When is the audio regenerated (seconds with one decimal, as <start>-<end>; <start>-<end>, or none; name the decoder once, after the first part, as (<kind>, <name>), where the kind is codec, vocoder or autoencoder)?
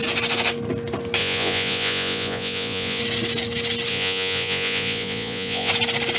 1.2-3.0 (vocoder, Vocos); 3.9-5.7